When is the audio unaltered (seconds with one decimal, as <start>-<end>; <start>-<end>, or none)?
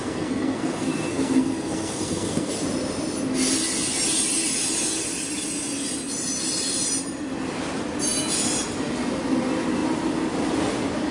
2.5-11.1